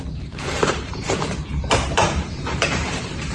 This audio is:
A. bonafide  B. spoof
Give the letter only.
B